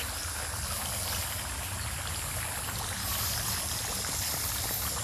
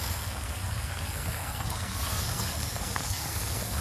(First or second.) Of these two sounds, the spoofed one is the second